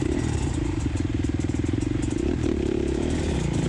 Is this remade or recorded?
remade